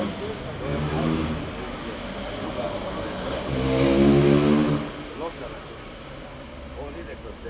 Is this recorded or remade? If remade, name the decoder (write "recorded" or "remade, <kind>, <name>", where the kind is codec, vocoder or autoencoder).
recorded